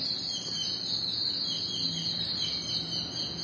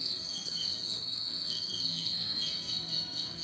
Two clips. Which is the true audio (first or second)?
first